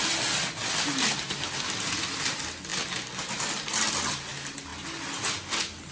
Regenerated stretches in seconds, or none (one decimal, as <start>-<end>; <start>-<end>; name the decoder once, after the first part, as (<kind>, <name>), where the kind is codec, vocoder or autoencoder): none